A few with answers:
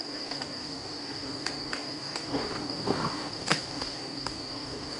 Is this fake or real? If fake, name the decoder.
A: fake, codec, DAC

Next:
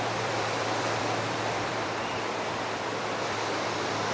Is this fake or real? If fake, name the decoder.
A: fake, vocoder, BigVGAN v2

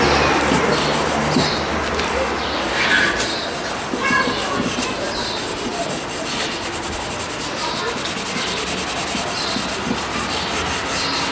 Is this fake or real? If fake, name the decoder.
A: real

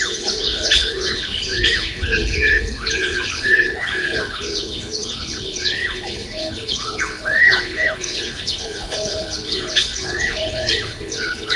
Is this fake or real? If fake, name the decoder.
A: fake, codec, HILCodec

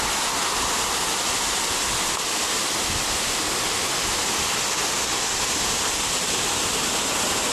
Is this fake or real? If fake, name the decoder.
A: real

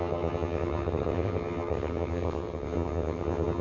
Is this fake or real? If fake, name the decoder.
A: fake, vocoder, HiFi-GAN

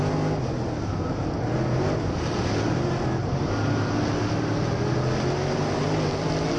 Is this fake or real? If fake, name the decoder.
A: real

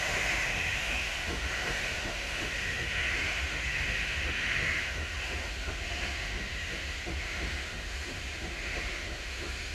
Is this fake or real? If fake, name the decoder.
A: fake, autoencoder, DAC-VAE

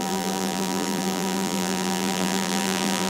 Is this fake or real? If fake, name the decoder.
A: fake, vocoder, BigVGAN v2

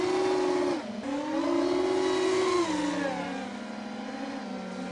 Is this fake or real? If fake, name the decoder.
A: real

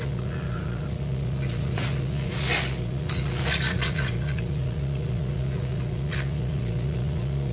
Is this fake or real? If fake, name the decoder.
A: fake, vocoder, Vocos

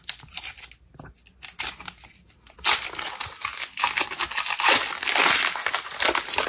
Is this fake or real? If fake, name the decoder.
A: real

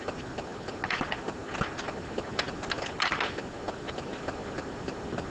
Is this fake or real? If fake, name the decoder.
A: real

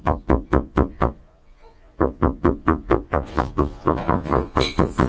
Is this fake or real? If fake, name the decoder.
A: fake, vocoder, Vocos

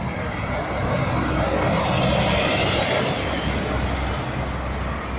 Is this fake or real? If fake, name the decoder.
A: real